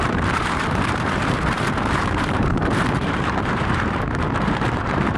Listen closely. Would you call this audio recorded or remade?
remade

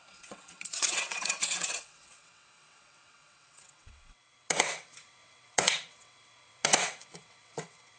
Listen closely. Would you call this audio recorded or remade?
remade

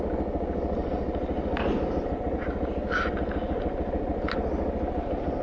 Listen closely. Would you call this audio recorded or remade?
recorded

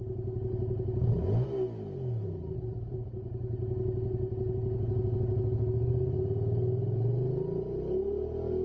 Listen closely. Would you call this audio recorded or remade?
recorded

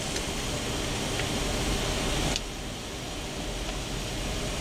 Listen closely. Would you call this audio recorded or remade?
recorded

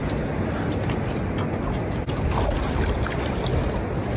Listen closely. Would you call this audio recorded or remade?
recorded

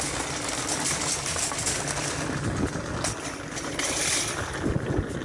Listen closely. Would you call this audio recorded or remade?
recorded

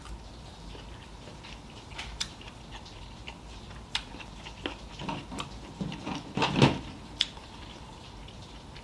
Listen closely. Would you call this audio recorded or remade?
remade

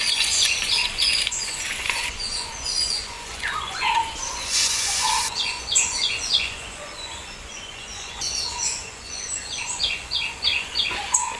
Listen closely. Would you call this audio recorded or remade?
remade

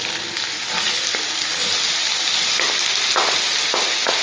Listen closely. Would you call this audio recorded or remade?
recorded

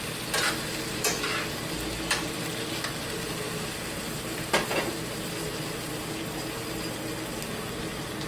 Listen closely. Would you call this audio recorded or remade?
recorded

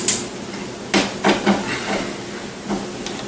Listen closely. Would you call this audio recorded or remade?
recorded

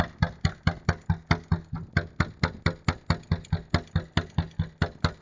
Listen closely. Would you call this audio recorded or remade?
recorded